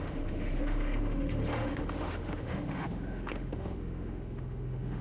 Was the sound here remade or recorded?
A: remade